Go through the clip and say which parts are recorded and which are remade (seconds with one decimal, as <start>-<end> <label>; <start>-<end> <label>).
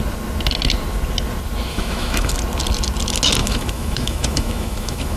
0.0-1.7 recorded; 1.7-2.3 remade; 2.3-3.4 recorded; 3.4-5.2 remade